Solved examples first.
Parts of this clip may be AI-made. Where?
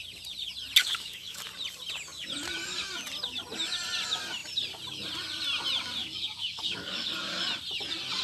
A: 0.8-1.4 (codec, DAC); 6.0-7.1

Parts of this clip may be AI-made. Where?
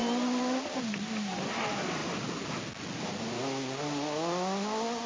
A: none